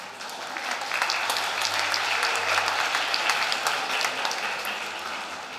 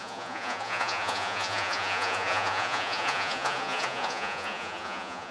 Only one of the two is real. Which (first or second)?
first